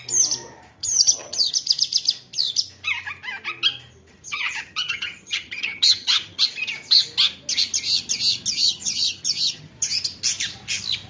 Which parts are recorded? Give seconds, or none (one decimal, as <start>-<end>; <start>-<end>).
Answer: 0.0-0.8; 1.5-4.1; 6.4-8.5; 9.7-11.1